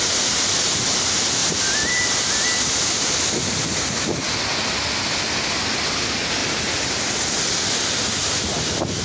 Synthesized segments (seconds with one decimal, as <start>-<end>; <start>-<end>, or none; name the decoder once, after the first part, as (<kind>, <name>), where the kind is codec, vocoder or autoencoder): 1.4-3.2 (vocoder, BigVGAN v2); 6.4-8.4